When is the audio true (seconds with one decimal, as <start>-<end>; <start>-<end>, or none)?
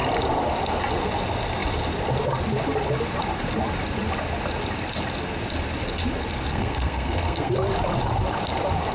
0.0-6.5; 7.5-8.9